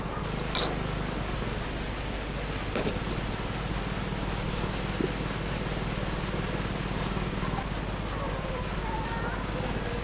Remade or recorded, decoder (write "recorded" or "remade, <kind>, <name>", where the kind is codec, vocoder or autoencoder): recorded